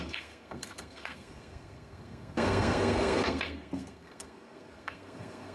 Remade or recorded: remade